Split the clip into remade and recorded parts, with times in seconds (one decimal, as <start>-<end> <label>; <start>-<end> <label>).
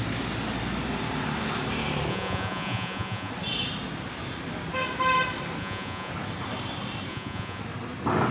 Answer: 0.0-2.1 recorded; 2.1-3.3 remade; 3.3-5.6 recorded; 5.6-6.1 remade; 6.1-7.1 recorded; 7.1-7.6 remade; 7.6-8.3 recorded